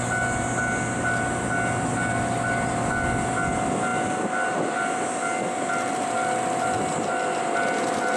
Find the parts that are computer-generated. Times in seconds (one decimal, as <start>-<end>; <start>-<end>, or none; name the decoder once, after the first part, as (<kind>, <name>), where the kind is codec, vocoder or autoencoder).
none